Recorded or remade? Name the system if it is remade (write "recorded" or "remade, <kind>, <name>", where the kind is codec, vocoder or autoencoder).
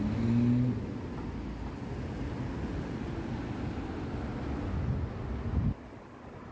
recorded